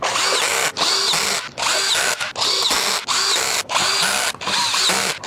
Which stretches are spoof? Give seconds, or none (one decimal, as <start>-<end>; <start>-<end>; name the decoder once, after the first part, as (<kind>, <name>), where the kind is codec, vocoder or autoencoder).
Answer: none